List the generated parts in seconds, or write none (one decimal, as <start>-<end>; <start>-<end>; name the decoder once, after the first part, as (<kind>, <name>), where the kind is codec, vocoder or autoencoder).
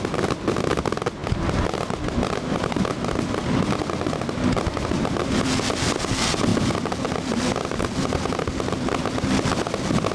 none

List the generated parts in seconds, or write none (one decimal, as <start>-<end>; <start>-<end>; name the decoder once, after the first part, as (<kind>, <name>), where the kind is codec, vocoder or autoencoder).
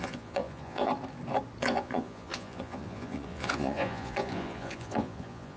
0.0-0.9 (vocoder, Vocos); 1.6-5.6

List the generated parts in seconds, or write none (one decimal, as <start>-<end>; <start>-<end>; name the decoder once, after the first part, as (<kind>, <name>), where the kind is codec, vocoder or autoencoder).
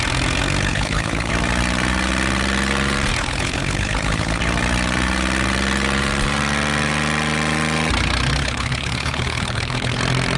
0.7-1.3 (codec, HILCodec); 3.2-4.4; 8.4-10.0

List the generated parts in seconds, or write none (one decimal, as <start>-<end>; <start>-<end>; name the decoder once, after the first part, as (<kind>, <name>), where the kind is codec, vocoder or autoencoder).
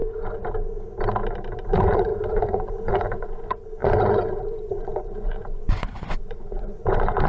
1.7-7.3 (vocoder, Vocos)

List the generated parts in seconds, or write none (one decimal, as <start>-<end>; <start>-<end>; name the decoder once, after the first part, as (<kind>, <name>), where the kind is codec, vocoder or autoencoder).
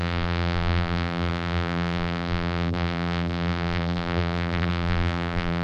0.0-5.6 (vocoder, BigVGAN v2)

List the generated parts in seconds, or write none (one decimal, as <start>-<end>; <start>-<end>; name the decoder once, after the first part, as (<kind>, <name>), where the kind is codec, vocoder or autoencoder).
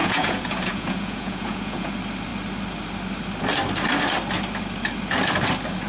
0.0-1.9 (vocoder, Vocos)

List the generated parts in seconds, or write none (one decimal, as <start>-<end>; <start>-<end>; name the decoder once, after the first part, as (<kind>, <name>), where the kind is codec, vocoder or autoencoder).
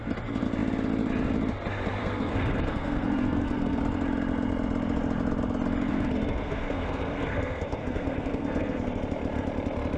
2.0-3.8 (codec, SNAC); 5.9-9.0